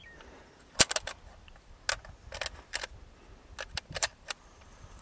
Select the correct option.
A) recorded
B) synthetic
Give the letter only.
A